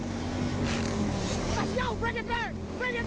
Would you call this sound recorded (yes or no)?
no